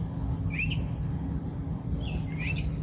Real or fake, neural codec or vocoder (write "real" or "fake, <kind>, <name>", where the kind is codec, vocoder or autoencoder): real